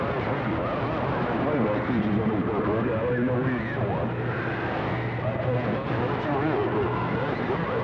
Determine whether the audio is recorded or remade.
recorded